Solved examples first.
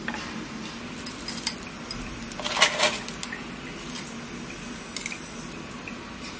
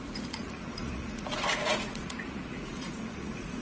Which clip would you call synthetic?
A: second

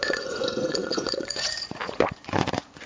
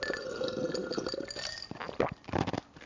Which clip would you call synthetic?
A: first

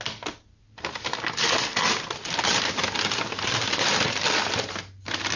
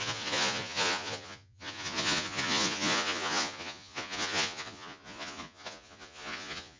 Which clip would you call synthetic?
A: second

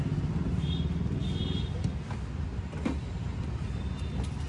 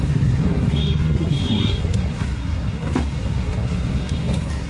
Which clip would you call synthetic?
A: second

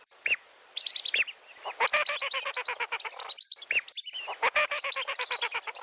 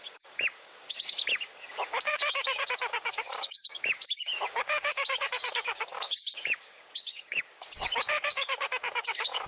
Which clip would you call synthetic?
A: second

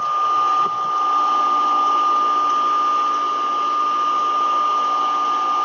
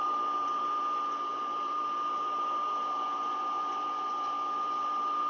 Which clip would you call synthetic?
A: second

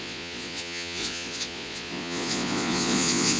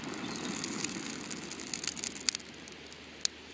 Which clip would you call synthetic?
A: first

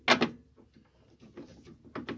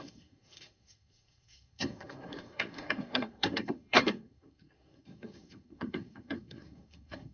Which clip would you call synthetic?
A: second